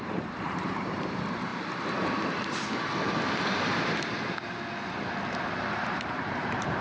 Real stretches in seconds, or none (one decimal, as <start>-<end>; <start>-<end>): 1.5-5.6